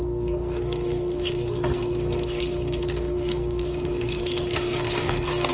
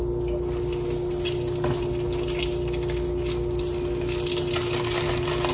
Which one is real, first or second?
second